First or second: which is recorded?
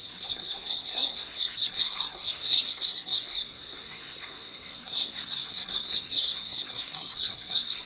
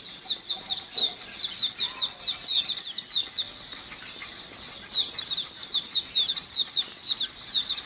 second